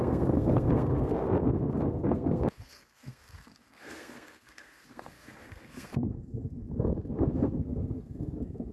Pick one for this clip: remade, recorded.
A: remade